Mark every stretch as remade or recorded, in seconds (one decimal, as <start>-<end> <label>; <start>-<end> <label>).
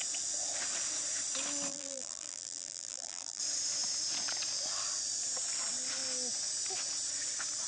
0.0-1.7 recorded; 1.7-3.4 remade; 3.4-7.7 recorded